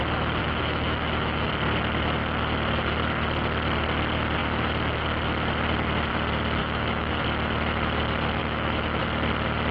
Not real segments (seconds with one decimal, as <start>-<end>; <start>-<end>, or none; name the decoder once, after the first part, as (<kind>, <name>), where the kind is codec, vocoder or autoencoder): 0.4-1.5 (autoencoder, DAC-VAE); 6.6-7.2; 8.4-9.0